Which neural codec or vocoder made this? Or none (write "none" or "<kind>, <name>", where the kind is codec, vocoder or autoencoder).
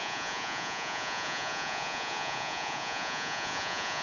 vocoder, Vocos